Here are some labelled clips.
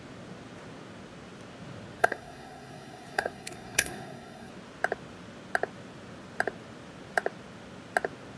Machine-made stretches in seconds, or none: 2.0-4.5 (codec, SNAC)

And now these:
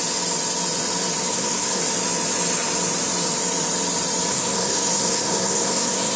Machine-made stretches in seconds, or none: 1.3-1.8 (codec, SNAC); 4.3-6.2

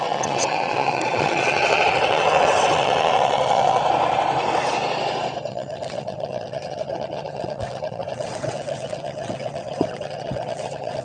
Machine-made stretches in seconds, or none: 0.0-3.8 (vocoder, WaveNeXt); 5.5-11.0

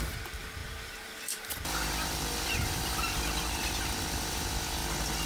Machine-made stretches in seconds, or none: 0.0-4.8 (vocoder, BigVGAN v2)

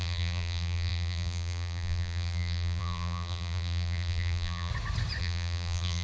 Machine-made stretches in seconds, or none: 0.0-4.7 (vocoder, BigVGAN v2); 5.2-6.0